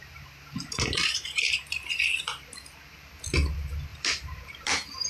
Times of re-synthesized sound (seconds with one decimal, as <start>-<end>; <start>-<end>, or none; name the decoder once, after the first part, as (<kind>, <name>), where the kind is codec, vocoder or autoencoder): 0.0-3.1 (vocoder, BigVGAN v2); 3.9-5.1